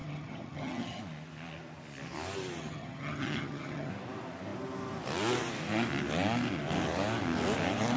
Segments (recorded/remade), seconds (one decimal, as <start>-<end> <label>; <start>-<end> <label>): 0.0-1.0 remade; 1.0-2.6 recorded; 2.6-3.9 remade; 3.9-8.0 recorded